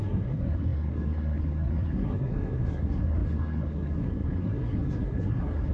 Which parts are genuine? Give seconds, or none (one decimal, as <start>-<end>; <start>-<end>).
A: none